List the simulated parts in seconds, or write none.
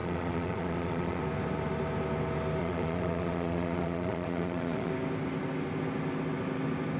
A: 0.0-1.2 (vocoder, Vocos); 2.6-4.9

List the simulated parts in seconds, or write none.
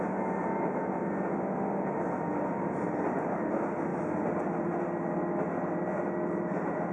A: none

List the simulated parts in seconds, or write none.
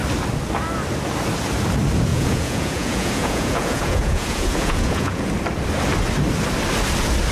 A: 2.1-5.3 (vocoder, Vocos)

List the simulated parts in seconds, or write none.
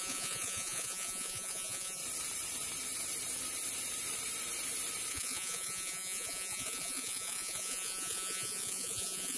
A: 0.0-2.0 (vocoder, Vocos); 5.1-9.4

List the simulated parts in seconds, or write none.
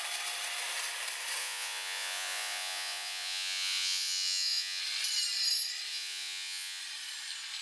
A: 1.4-4.8 (vocoder, Vocos); 5.9-6.8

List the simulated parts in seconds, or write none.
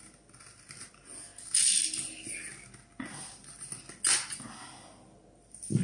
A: none